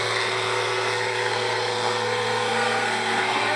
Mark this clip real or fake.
fake